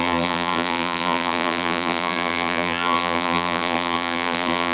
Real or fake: fake